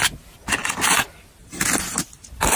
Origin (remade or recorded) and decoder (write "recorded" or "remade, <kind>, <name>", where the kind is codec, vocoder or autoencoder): recorded